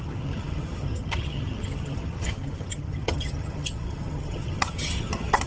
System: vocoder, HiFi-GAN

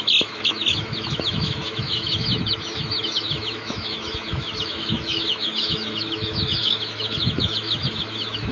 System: autoencoder, DAC-VAE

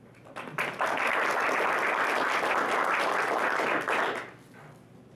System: none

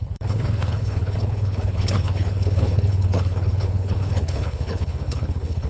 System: codec, HILCodec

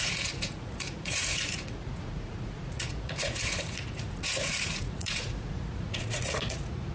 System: vocoder, Vocos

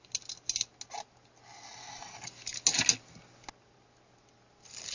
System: none